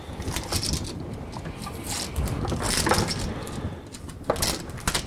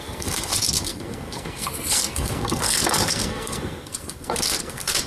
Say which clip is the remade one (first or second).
second